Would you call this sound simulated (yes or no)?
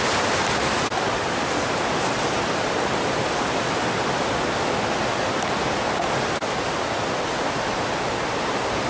no